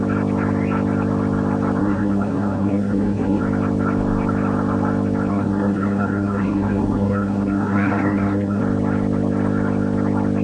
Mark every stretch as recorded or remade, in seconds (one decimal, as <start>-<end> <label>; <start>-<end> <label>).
0.0-1.8 recorded; 1.8-3.4 remade; 3.4-5.3 recorded; 5.3-8.6 remade; 8.6-10.4 recorded